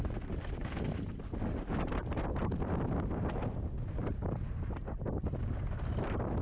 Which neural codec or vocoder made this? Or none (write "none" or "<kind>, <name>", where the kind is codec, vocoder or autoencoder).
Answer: none